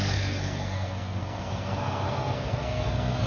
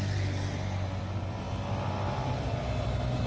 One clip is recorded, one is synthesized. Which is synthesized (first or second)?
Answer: first